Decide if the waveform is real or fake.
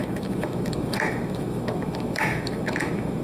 fake